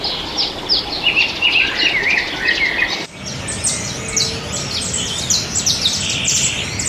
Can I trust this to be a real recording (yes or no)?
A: yes